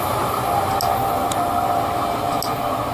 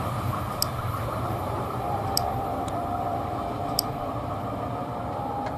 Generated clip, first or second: second